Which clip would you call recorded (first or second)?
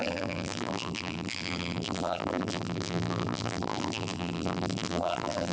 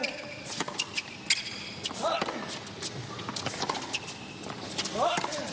second